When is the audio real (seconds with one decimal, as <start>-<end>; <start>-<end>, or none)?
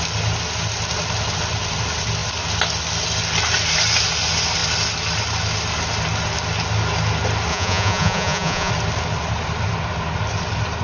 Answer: 0.0-7.5; 8.7-10.8